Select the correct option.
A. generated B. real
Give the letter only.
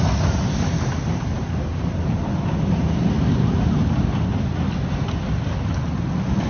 B